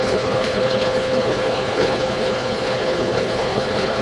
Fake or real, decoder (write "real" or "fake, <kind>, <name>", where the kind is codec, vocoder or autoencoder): fake, codec, HILCodec